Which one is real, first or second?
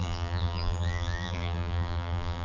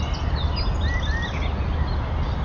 second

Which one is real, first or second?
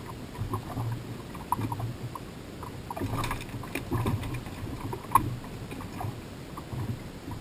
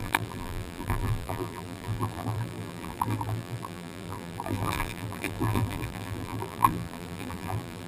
first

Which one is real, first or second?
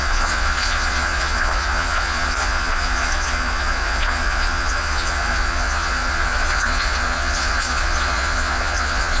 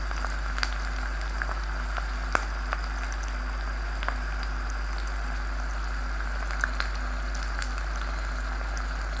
second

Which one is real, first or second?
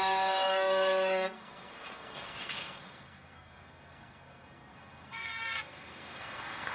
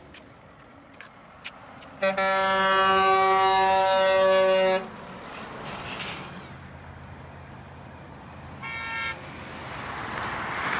second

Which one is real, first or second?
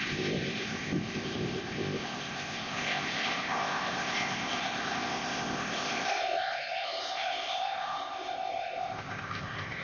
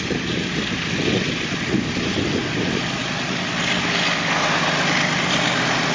second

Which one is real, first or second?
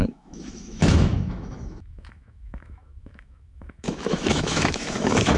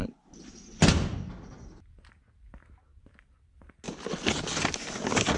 second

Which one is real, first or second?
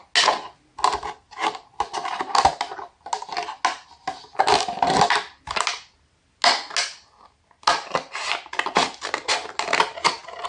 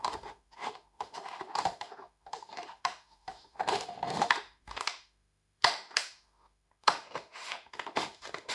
first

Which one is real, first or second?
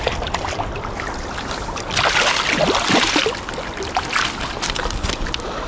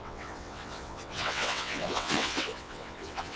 first